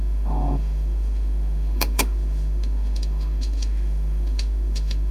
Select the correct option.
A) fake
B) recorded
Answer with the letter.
A